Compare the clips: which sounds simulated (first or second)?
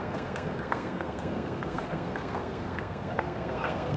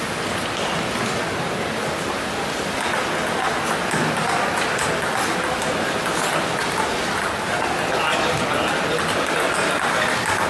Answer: first